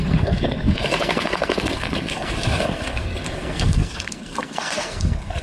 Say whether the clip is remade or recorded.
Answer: remade